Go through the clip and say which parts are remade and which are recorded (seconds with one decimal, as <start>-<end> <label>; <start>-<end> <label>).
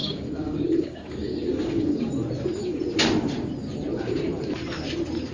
0.0-2.1 remade; 2.1-5.3 recorded